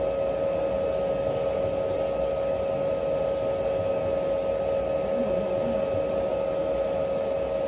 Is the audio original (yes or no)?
yes